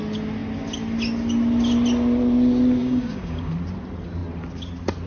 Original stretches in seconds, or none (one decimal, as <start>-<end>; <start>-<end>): 0.0-2.8; 3.5-5.1